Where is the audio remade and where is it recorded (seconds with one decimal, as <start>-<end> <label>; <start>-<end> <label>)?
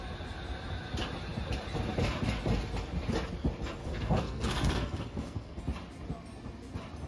0.0-3.8 recorded; 3.8-5.6 remade; 5.6-7.1 recorded